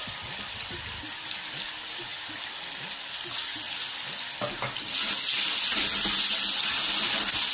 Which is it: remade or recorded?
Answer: recorded